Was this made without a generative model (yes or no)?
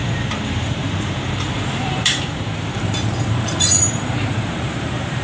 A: no